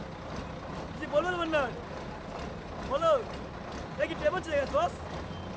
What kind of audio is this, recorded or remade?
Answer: recorded